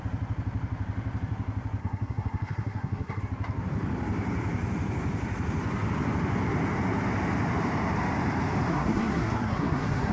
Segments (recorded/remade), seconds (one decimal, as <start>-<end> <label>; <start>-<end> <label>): 0.0-1.8 recorded; 1.8-3.2 remade; 3.2-8.7 recorded; 8.7-10.1 remade